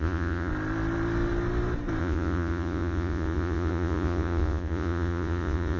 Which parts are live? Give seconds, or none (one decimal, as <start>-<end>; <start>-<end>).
0.5-2.0